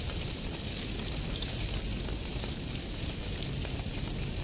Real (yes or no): yes